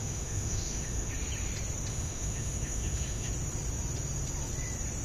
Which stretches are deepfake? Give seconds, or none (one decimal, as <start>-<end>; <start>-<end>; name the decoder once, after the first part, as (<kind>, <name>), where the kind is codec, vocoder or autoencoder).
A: 0.0-1.1 (autoencoder, DAC-VAE); 1.9-3.3